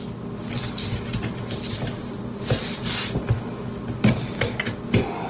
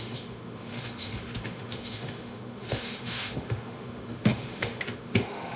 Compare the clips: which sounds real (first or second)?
first